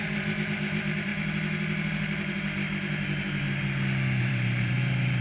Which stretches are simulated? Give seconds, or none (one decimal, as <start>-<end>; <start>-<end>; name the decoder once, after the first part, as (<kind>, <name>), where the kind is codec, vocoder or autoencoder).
0.0-1.1 (vocoder, BigVGAN v2); 4.2-5.2